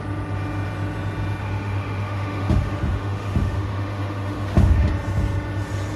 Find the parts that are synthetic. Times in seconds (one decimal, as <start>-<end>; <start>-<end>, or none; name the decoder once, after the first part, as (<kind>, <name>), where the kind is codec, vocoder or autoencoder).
1.4-4.9 (autoencoder, DAC-VAE)